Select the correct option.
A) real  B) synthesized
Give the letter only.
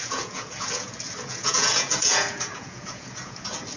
B